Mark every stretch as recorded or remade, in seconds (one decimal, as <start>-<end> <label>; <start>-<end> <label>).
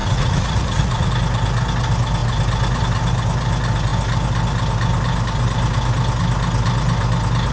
0.0-1.1 remade; 1.1-7.5 recorded